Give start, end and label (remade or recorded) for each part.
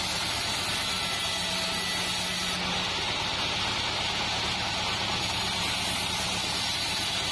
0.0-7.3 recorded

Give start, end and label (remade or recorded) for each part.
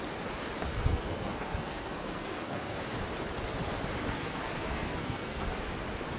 0.0-0.7 recorded; 0.7-2.8 remade; 2.8-4.0 recorded; 4.0-5.6 remade; 5.6-6.2 recorded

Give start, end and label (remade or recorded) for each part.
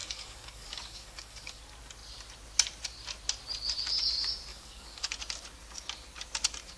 0.0-1.6 remade; 1.6-4.5 recorded; 4.5-5.2 remade; 5.2-6.8 recorded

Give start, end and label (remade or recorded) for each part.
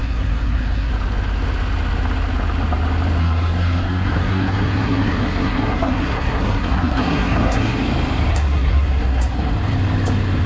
0.0-0.9 remade; 0.9-3.2 recorded; 3.2-7.8 remade; 7.8-8.3 recorded; 8.3-9.5 remade; 9.5-10.5 recorded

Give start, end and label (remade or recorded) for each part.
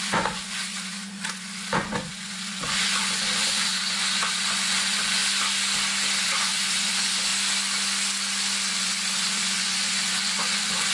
0.0-5.2 remade; 5.2-6.2 recorded; 6.2-7.3 remade; 7.3-8.7 recorded; 8.7-10.9 remade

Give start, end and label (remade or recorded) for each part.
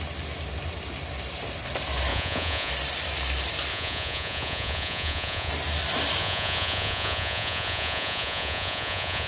0.0-2.1 recorded; 2.1-2.7 remade; 2.7-3.7 recorded; 3.7-5.5 remade; 5.5-6.2 recorded; 6.2-9.3 remade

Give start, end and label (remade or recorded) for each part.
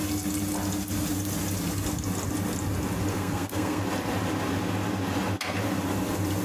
0.0-3.1 recorded; 3.1-3.8 remade; 3.8-6.4 recorded